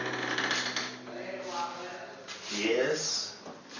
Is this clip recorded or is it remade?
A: recorded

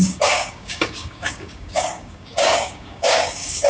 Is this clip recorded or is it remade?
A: remade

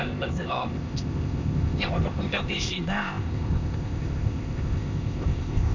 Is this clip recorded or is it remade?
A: remade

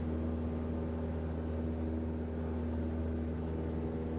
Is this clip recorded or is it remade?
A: recorded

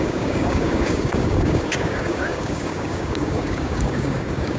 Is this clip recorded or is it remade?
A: remade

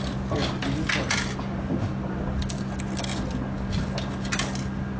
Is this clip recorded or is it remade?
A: recorded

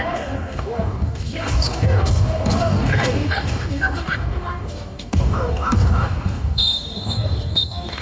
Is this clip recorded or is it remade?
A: remade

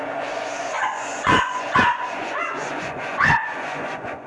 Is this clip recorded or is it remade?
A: remade